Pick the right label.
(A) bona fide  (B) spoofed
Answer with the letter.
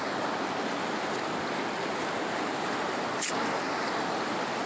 A